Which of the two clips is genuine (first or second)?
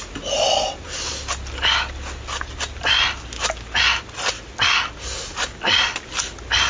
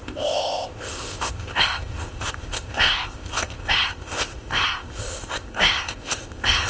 first